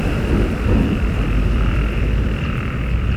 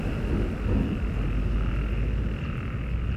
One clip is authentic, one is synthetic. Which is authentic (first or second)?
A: second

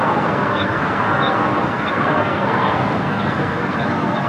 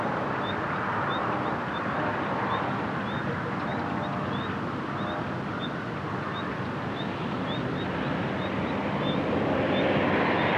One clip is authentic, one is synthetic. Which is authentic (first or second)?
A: second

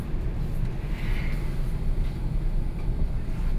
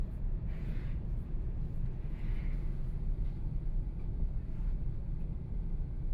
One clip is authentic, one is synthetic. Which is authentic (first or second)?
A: first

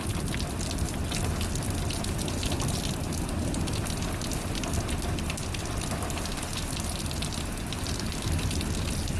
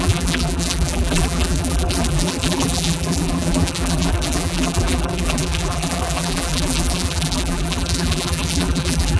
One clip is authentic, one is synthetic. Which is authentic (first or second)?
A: first